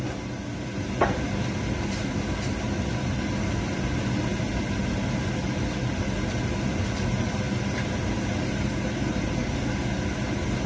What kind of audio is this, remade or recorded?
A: recorded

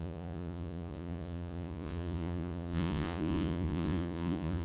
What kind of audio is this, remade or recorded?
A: remade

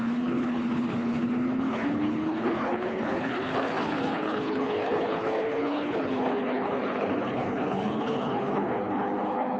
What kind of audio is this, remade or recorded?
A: remade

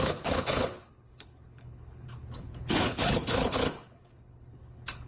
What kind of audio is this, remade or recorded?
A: remade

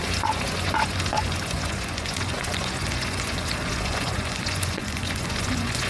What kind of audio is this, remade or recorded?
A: remade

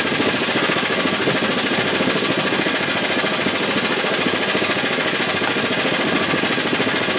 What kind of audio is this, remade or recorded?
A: recorded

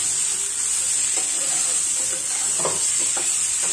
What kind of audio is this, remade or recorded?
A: recorded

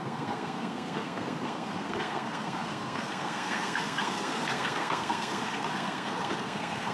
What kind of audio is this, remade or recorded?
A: remade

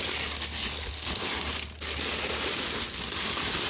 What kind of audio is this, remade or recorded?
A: recorded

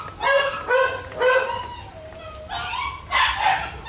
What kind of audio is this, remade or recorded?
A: recorded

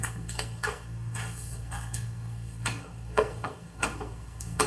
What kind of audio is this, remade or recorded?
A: remade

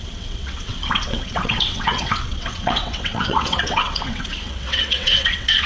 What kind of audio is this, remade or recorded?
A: remade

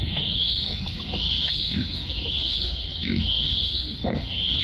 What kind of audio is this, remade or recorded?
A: remade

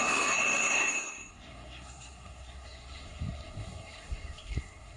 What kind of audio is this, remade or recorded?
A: remade